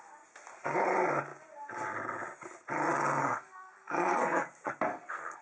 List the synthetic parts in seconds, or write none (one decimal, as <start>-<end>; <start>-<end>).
3.2-4.5; 4.9-5.4